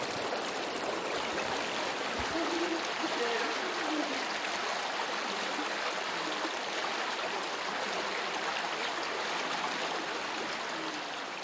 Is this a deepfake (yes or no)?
no